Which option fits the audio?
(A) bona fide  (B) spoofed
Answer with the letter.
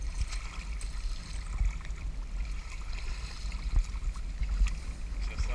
A